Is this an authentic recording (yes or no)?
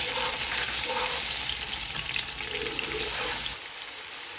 yes